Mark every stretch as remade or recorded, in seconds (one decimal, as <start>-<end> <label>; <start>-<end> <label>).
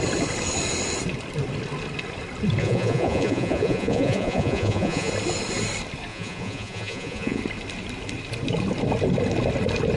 0.0-2.6 recorded; 2.6-5.1 remade; 5.1-6.1 recorded; 6.1-7.4 remade; 7.4-10.0 recorded